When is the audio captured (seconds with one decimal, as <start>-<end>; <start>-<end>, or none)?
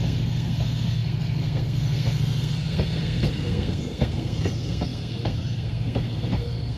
none